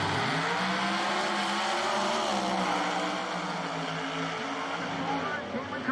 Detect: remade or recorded recorded